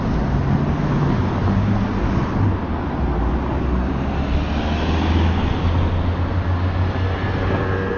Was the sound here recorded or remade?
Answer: recorded